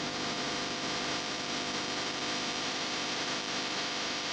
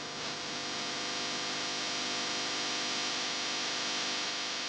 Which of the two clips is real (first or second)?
second